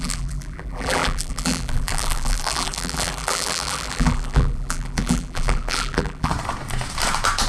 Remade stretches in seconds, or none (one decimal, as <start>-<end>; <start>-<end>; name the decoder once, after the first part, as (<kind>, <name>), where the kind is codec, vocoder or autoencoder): 0.0-6.3 (vocoder, BigVGAN v2)